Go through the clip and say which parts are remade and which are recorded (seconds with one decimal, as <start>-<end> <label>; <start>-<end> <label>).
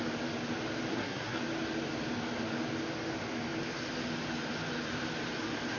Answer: 0.0-0.9 recorded; 0.9-1.4 remade; 1.4-5.8 recorded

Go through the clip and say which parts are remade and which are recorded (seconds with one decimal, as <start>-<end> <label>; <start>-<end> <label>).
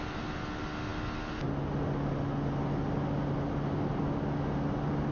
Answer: 0.0-5.1 recorded